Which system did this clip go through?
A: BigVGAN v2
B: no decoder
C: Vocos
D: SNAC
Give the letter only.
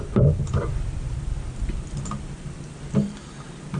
B